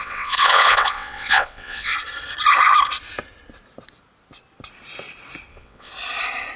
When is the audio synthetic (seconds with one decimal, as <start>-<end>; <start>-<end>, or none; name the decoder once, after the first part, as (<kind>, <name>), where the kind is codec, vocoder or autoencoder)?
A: 0.0-1.9 (vocoder, WaveNeXt); 5.5-5.9

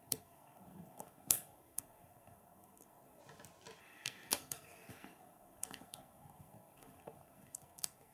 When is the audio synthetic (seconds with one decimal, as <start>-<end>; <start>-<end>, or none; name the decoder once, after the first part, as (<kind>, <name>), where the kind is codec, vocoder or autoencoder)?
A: 0.0-3.2 (codec, SNAC); 3.8-8.1

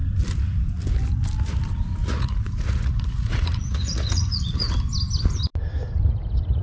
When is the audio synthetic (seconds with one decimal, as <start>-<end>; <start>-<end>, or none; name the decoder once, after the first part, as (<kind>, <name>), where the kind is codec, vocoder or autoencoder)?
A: 2.0-4.7 (vocoder, Vocos)

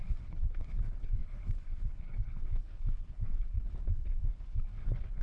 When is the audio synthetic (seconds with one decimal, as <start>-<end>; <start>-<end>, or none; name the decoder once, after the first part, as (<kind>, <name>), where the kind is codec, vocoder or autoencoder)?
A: 0.0-5.2 (codec, HILCodec)

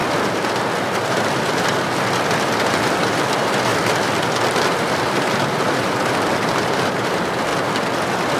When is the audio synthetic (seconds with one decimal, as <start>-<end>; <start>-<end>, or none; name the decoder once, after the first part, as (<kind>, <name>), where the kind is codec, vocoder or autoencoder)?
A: 2.6-7.5 (vocoder, BigVGAN v2); 8.0-8.4

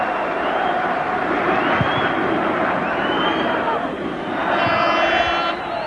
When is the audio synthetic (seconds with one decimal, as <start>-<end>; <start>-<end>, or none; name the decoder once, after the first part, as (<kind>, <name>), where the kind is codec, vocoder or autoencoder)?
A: 0.0-4.4 (vocoder, BigVGAN v2); 5.5-5.9